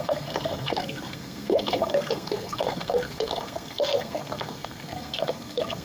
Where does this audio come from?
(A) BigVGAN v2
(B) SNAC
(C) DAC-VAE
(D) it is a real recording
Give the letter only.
B